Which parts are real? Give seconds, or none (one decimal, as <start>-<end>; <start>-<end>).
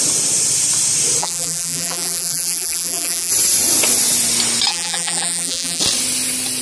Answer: 0.0-1.2; 3.3-4.7; 5.8-6.6